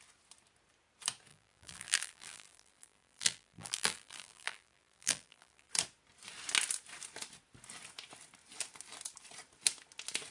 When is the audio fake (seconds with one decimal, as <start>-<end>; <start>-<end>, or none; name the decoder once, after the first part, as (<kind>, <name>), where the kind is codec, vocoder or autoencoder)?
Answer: 1.3-5.7 (vocoder, BigVGAN v2)